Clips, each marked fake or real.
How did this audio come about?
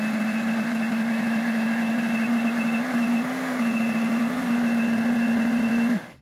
real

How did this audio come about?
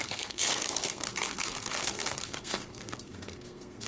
fake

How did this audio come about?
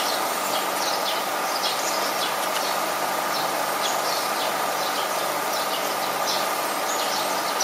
real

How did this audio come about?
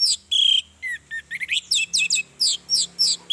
real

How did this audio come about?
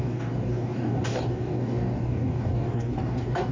fake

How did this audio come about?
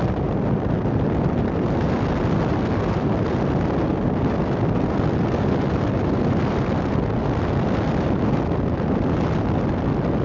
real